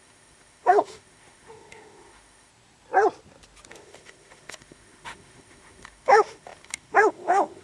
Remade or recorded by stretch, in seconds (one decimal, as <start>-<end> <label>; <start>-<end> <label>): 0.0-2.5 remade; 2.5-3.7 recorded; 3.7-7.6 remade